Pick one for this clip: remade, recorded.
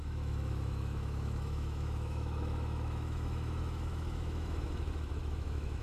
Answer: remade